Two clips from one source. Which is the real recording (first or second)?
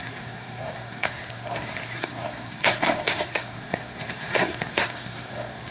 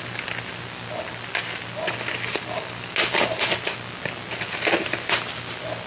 second